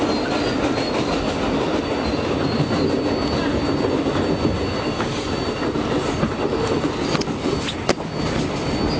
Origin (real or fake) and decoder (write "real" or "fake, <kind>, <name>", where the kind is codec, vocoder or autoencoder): real